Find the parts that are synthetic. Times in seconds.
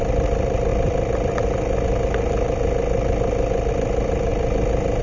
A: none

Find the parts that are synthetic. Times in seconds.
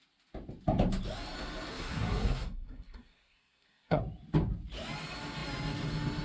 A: 1.7-4.0 (codec, SNAC)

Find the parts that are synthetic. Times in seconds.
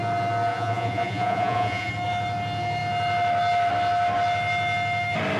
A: 0.5-1.9 (vocoder, Vocos)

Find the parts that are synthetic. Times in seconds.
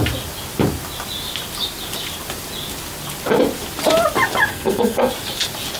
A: 4.5-5.1 (codec, SNAC)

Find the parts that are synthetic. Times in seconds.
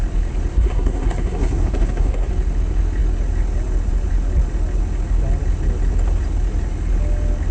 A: 0.5-2.3 (codec, SNAC)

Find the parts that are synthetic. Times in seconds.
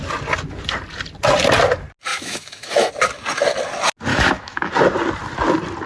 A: 2.1-2.9 (autoencoder, DAC-VAE); 4.1-4.7